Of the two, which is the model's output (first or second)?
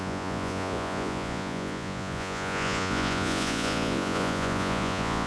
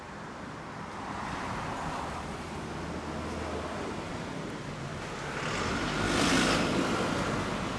first